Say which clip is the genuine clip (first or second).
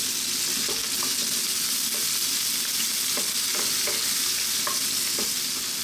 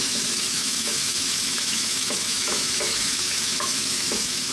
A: first